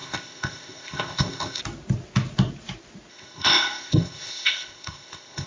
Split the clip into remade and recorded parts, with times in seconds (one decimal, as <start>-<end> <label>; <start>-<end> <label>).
0.0-1.6 remade; 1.6-3.1 recorded; 3.1-5.5 remade